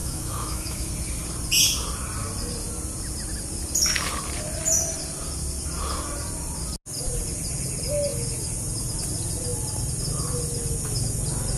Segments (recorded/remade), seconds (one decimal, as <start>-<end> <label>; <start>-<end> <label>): 0.0-0.9 remade; 0.9-11.6 recorded